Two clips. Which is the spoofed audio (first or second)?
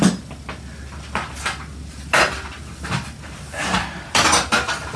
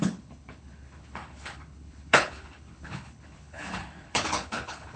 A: second